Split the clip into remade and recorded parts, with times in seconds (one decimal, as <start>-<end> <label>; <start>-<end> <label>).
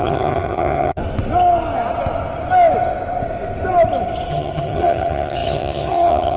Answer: 0.0-1.0 remade; 1.0-4.3 recorded; 4.3-6.4 remade